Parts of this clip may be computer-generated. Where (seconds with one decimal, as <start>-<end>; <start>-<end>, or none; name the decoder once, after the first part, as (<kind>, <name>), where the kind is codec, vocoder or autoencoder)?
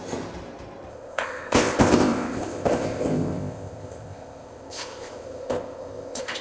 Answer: 0.9-6.4 (codec, ZipCodec)